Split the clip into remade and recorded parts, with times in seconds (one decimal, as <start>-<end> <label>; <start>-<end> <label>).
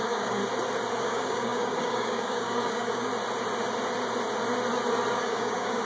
0.0-0.4 remade; 0.4-1.0 recorded; 1.0-3.1 remade; 3.1-5.1 recorded; 5.1-5.8 remade